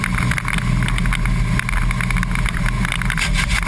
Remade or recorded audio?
recorded